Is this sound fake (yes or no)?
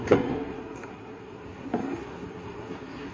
yes